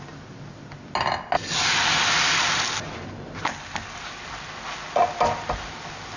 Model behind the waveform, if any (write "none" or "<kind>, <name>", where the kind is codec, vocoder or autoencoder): none